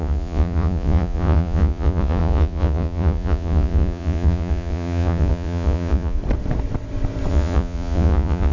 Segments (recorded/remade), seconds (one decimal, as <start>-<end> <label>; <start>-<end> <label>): 0.0-6.2 remade; 6.2-7.3 recorded; 7.3-8.5 remade